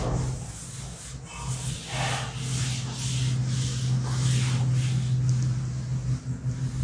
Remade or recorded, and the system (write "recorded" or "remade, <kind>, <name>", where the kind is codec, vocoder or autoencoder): recorded